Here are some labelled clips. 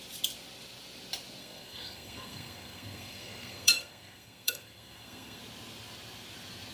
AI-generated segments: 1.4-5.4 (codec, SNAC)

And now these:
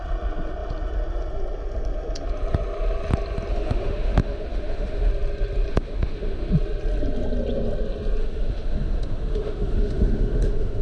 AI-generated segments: 3.5-5.1 (autoencoder, DAC-VAE); 5.7-6.5; 8.2-10.8

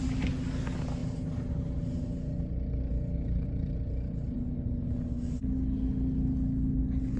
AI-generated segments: 1.0-4.4 (vocoder, BigVGAN v2)

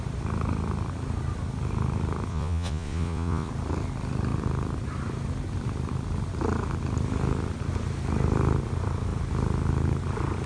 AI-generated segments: 2.3-3.5 (vocoder, Vocos)

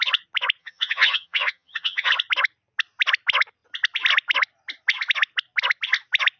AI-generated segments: 0.6-2.1 (vocoder, HiFi-GAN)

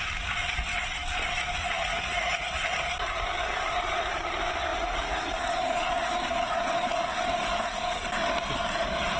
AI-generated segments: 1.6-2.5 (vocoder, Vocos); 4.7-7.1

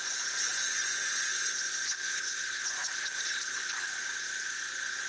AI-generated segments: 0.0-2.8 (vocoder, Vocos); 3.6-5.1

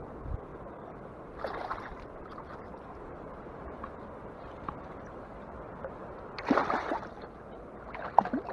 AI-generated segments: 2.7-6.9 (vocoder, BigVGAN v2)